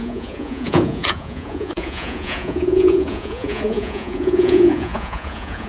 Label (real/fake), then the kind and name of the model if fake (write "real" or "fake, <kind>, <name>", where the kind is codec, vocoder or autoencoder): fake, vocoder, Vocos